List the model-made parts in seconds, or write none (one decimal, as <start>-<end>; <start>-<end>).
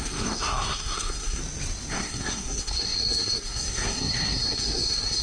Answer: 0.0-1.4; 1.9-5.2